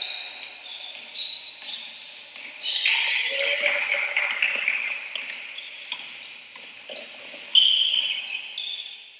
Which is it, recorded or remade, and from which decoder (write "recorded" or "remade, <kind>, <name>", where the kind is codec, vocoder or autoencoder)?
recorded